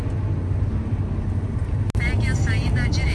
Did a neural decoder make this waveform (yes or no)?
no